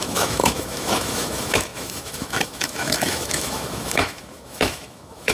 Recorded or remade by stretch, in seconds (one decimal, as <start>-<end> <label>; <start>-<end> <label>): 0.0-5.3 remade